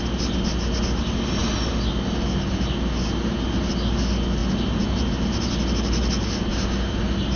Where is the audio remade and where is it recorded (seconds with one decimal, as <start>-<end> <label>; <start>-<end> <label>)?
0.0-4.4 recorded; 4.4-5.1 remade; 5.1-6.5 recorded; 6.5-7.0 remade; 7.0-7.4 recorded